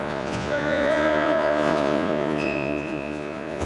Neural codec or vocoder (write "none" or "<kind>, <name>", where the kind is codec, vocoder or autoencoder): vocoder, Vocos